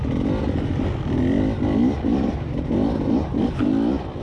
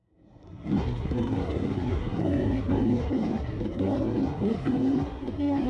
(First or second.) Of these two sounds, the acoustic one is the first